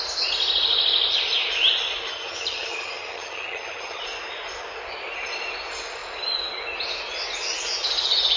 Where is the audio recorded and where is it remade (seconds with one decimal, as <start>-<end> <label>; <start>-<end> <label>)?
0.0-2.1 recorded; 2.1-4.0 remade; 4.0-8.4 recorded